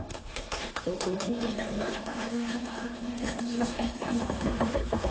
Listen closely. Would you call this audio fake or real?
fake